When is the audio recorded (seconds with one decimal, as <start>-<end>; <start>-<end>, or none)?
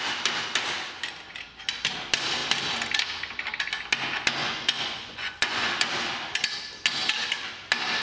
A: 0.0-4.4; 5.7-8.0